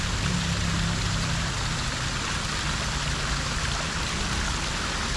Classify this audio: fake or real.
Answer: real